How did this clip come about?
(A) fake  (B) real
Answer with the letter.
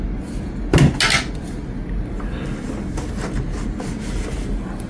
B